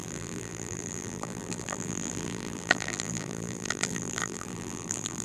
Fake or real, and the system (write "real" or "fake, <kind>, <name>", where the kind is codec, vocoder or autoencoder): fake, vocoder, BigVGAN v2